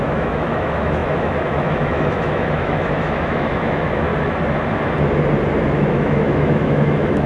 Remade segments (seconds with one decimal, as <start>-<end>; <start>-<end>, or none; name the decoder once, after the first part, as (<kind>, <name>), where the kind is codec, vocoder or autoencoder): 0.0-4.1 (autoencoder, DAC-VAE); 5.7-7.3